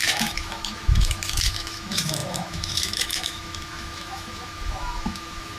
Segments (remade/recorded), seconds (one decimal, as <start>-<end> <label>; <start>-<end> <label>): 0.0-5.6 remade